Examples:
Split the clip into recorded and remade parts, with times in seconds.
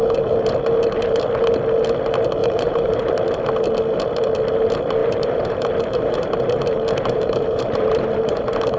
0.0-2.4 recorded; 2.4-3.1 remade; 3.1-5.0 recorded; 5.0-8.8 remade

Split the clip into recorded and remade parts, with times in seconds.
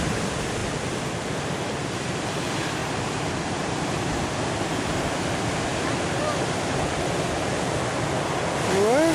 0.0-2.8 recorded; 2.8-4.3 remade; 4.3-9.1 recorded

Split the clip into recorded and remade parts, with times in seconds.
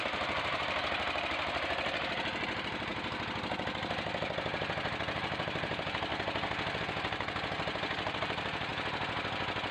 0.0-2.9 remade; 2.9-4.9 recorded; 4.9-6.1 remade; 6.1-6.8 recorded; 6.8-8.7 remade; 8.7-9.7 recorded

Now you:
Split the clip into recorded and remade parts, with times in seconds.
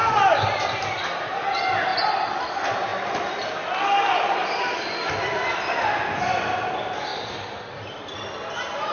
0.0-1.1 remade; 1.1-7.1 recorded; 7.1-8.0 remade; 8.0-8.9 recorded